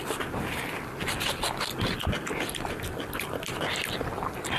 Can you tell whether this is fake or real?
real